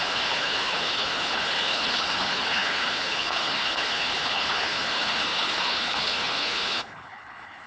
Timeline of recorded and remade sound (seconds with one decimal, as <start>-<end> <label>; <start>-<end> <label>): 0.0-7.7 remade